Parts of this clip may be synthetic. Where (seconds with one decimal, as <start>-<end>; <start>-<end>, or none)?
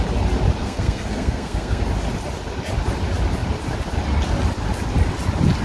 0.6-1.8